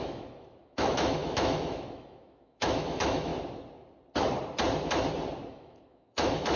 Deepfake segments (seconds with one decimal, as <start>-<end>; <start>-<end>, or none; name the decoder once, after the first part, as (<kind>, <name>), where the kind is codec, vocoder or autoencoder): 0.0-3.3 (autoencoder, DAC-VAE); 5.5-6.6